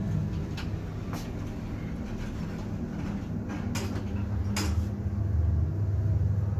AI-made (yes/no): no